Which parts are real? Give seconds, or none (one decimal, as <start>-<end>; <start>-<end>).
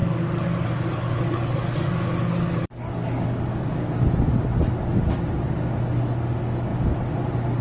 3.7-7.6